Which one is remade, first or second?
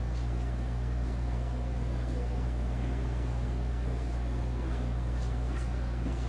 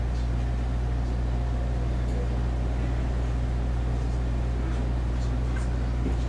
first